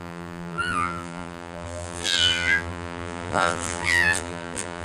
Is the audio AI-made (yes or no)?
yes